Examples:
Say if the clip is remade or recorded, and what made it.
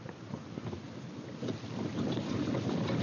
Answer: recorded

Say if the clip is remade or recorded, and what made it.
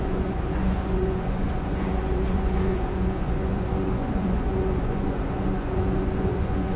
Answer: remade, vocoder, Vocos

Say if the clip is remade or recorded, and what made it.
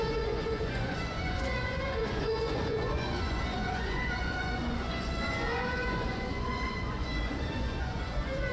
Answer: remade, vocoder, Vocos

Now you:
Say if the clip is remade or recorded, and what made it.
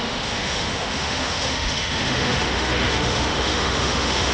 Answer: remade, autoencoder, DAC-VAE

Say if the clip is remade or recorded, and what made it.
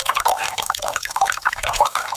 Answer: remade, codec, DAC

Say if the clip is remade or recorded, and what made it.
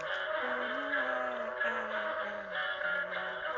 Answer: recorded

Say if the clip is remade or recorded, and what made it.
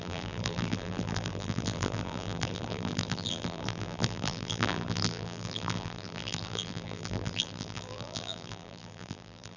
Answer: remade, vocoder, BigVGAN v2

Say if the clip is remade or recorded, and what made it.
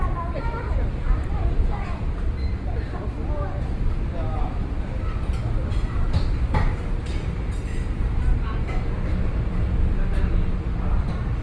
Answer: recorded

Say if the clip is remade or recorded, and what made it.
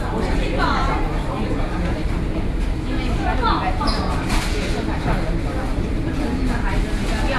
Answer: recorded